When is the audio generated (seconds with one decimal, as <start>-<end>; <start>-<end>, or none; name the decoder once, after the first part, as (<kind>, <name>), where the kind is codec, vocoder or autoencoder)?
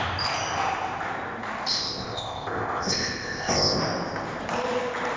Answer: 1.7-3.8 (codec, ZipCodec)